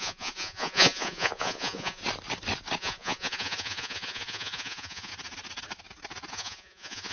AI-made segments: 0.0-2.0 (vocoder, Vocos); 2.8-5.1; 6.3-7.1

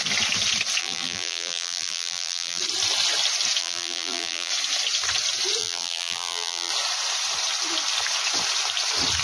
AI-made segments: 0.8-2.6 (vocoder, BigVGAN v2); 3.6-4.5; 5.6-6.7